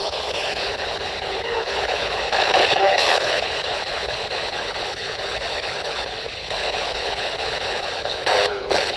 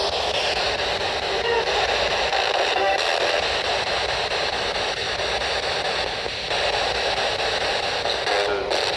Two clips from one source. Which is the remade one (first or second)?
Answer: first